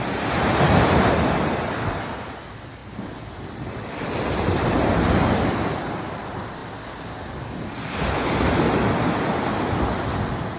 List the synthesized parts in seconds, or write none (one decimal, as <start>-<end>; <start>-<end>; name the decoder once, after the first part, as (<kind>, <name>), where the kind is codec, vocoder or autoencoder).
2.8-5.8 (vocoder, BigVGAN v2)